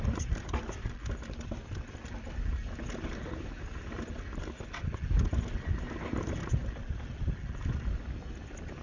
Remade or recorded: recorded